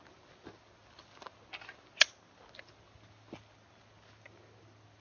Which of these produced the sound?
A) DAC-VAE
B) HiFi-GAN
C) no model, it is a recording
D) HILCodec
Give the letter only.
C